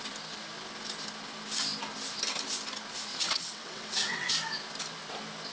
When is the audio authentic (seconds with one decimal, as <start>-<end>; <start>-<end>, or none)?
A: 0.0-3.1; 4.3-5.5